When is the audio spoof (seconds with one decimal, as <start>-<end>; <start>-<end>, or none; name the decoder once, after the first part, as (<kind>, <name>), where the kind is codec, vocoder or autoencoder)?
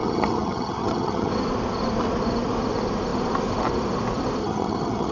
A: 0.0-1.3 (vocoder, HiFi-GAN); 4.4-5.1